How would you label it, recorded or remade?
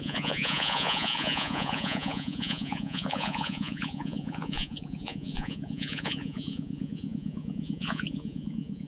remade